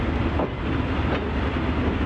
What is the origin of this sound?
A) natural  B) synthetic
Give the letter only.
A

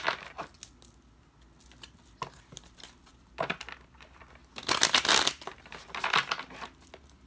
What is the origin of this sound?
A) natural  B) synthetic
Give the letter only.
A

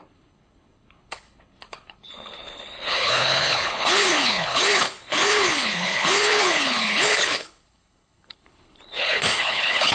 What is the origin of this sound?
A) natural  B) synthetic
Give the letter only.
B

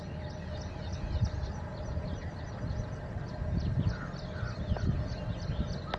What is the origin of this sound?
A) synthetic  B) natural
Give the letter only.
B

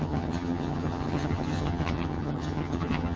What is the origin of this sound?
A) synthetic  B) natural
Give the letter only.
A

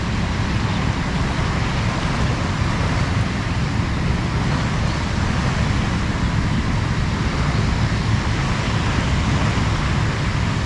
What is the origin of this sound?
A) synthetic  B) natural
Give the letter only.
B